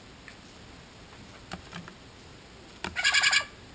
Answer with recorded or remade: recorded